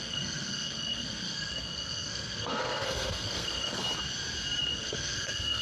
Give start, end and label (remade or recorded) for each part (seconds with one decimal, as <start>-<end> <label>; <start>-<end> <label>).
0.0-3.8 remade; 3.8-4.7 recorded; 4.7-5.6 remade